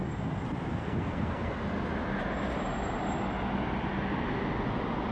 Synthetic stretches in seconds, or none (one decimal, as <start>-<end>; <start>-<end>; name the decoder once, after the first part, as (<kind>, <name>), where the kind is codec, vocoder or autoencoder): 0.7-1.5 (codec, SNAC)